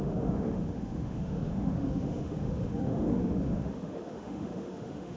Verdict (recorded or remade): remade